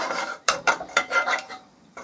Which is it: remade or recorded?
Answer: remade